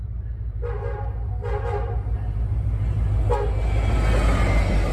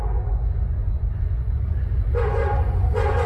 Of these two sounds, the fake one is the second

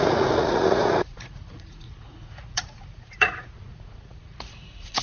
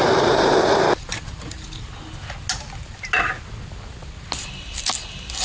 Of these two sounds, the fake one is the first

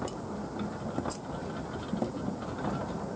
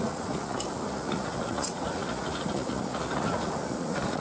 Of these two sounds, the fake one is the second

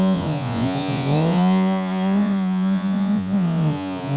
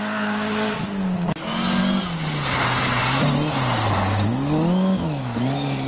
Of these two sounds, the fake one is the first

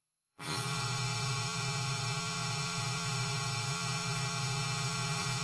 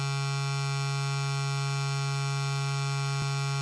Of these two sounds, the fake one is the first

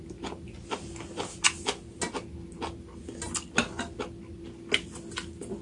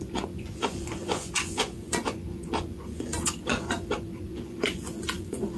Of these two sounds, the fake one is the second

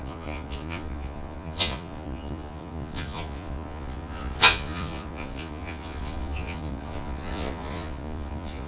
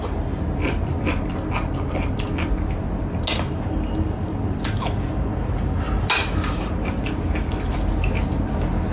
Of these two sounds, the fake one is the first